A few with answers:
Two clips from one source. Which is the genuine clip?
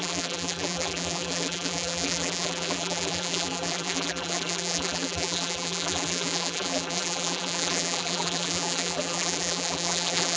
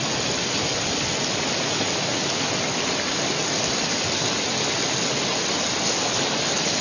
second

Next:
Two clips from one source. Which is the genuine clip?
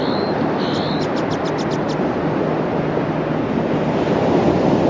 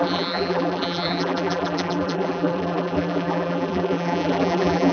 first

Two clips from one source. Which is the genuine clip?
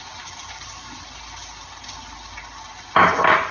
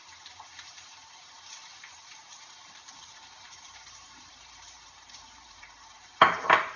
first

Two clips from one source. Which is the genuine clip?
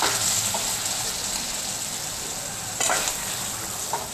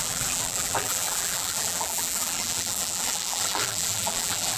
first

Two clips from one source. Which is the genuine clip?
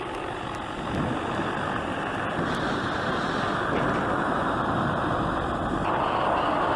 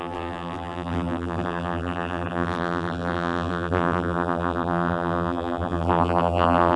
first